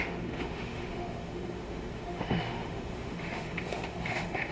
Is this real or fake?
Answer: fake